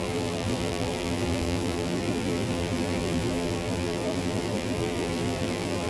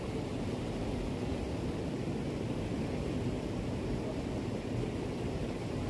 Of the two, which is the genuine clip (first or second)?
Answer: second